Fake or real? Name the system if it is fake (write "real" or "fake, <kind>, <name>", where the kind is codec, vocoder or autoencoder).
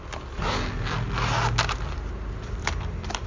real